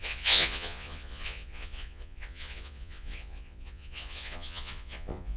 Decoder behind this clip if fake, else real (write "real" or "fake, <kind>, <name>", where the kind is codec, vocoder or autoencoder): fake, vocoder, Vocos